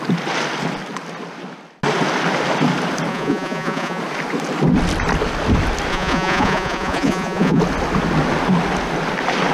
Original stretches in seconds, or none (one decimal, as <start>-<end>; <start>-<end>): 0.0-3.1; 4.0-5.9; 7.6-9.5